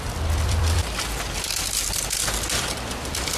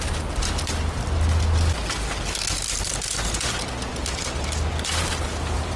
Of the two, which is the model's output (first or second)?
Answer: first